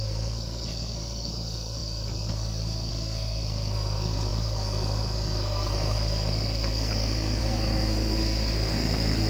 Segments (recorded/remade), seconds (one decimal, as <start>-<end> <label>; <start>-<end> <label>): 0.0-9.3 remade